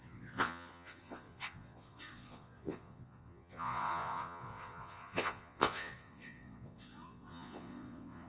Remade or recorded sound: remade